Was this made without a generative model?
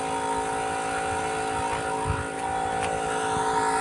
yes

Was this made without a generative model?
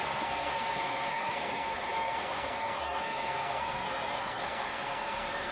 no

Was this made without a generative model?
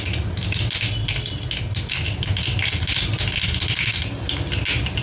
yes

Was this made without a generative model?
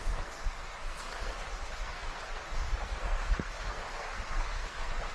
no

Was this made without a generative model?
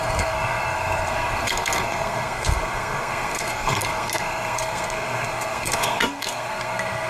no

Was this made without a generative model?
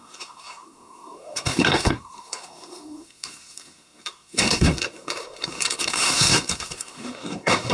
no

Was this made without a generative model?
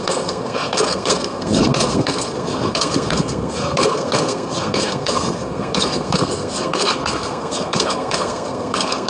no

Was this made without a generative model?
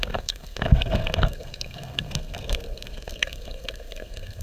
no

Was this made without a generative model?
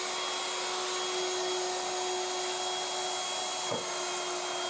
yes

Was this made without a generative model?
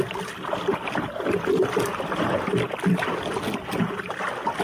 yes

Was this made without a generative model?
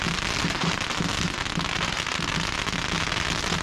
yes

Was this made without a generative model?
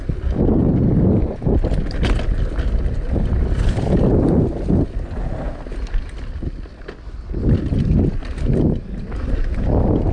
yes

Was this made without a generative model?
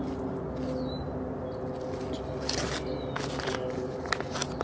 yes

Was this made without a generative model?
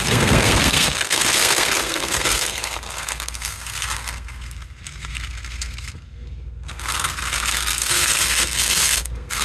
no